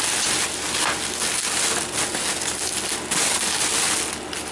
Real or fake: real